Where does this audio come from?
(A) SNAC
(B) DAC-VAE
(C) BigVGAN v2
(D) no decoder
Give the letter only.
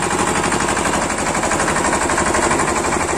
D